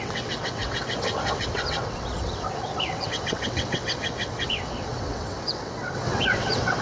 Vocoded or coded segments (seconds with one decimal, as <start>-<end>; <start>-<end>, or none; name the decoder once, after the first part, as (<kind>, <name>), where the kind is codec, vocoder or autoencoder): 0.0-6.8 (vocoder, WaveNeXt)